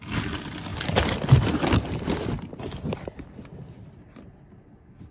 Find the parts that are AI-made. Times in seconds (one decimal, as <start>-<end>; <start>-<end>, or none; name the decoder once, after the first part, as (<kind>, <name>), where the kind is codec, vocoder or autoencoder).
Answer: none